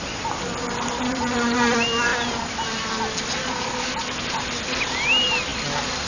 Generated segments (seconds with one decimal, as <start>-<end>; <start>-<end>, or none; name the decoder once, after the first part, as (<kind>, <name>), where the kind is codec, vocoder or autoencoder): none